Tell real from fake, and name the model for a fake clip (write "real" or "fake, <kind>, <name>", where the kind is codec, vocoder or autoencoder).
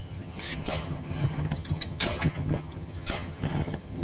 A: fake, vocoder, HiFi-GAN